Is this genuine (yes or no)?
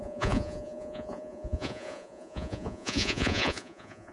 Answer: no